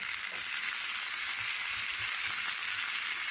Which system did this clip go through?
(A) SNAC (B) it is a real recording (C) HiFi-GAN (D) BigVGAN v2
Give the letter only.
B